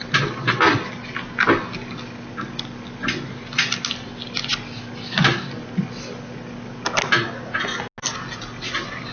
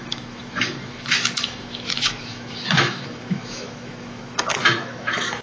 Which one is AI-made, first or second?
second